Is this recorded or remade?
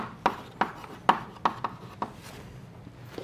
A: recorded